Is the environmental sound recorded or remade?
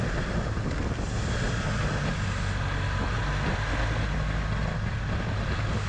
recorded